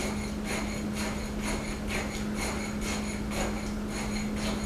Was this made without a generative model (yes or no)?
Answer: yes